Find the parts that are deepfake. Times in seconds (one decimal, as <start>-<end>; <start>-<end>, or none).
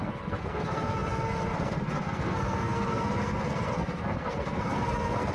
0.0-5.3